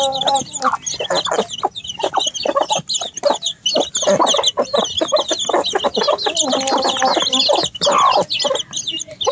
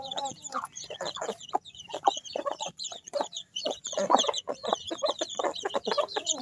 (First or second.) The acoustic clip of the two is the first